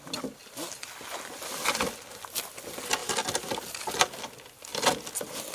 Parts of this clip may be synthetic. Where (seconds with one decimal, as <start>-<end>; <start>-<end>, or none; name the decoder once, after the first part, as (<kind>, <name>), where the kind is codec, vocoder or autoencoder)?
0.4-1.9 (vocoder, BigVGAN v2)